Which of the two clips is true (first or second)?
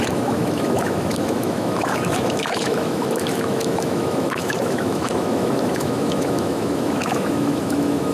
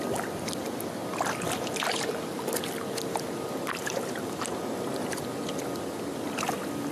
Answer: second